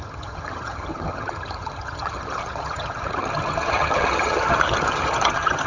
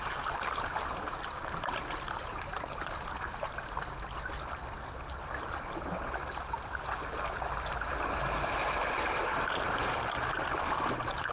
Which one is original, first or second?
second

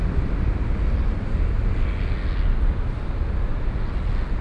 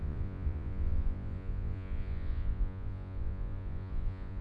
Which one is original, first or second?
first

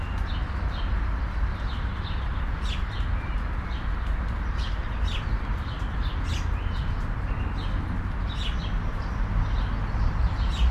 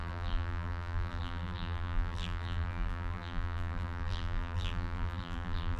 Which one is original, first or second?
first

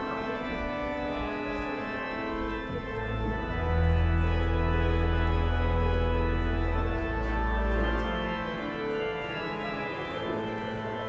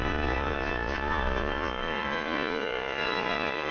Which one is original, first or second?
first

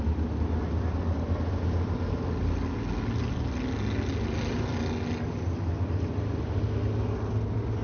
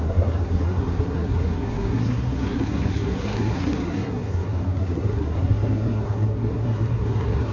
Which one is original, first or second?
first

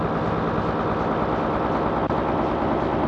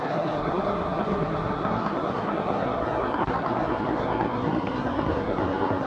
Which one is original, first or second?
first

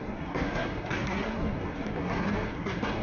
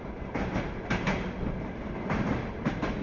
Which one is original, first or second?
second